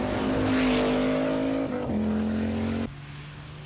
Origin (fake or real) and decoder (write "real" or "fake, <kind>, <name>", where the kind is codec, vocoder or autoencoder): real